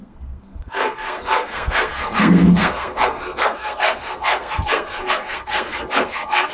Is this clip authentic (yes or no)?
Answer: no